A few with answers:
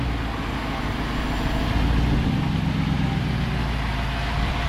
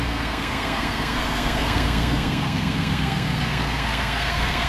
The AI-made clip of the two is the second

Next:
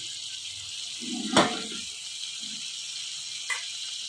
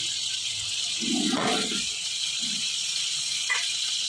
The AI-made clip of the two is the second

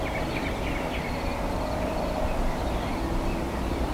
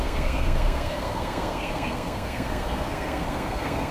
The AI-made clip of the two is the second